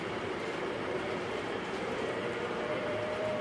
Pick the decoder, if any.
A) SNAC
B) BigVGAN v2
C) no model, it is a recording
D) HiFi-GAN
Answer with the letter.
B